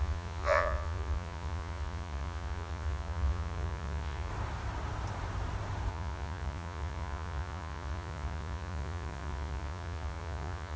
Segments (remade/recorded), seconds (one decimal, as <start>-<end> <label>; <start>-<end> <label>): 0.0-4.3 remade; 4.3-5.9 recorded; 5.9-10.8 remade